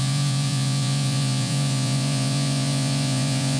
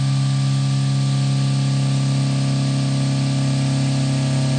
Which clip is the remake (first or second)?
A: first